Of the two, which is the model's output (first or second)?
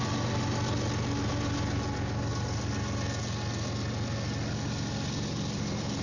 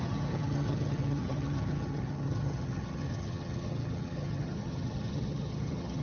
second